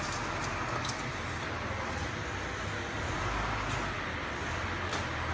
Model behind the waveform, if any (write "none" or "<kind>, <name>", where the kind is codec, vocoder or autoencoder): none